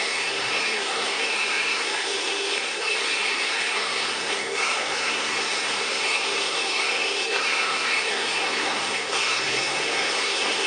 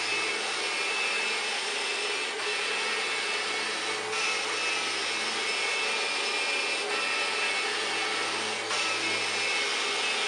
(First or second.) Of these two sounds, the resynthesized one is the first